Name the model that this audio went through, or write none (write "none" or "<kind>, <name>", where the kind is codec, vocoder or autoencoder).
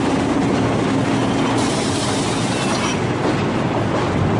none